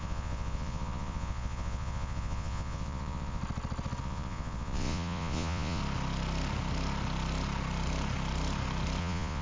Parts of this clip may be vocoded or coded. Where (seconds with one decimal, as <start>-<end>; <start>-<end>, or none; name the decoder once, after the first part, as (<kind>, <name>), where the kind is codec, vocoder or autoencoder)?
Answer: 0.0-3.4 (vocoder, Vocos); 4.0-5.8; 9.0-9.4